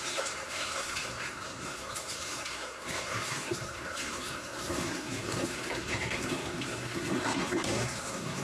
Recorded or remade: remade